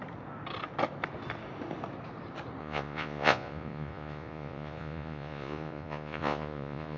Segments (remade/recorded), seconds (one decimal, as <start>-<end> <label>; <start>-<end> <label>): 0.0-2.6 recorded; 2.6-7.0 remade